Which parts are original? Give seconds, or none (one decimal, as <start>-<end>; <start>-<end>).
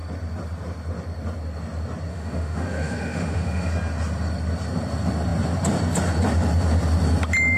0.0-2.1; 3.7-7.6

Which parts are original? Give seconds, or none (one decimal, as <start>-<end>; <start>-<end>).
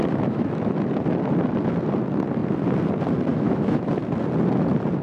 0.7-3.3; 3.9-5.0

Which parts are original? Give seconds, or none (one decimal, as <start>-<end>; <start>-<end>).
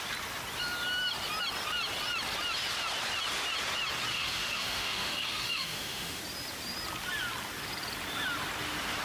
0.0-4.1; 6.2-9.0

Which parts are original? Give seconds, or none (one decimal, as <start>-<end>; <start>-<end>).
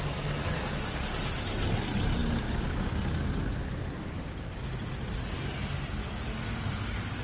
0.0-7.2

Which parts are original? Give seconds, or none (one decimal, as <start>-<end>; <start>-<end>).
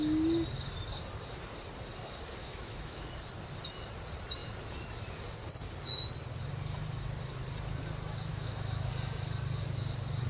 0.0-2.4; 3.1-8.3; 8.9-10.3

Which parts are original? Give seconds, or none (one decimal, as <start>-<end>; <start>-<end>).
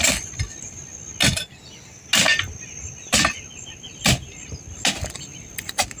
0.0-6.0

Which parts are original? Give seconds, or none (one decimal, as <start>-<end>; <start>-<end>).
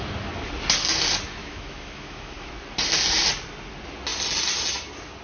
0.0-1.4; 2.5-5.2